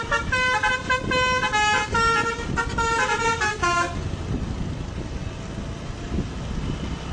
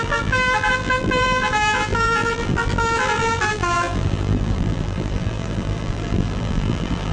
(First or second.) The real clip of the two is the first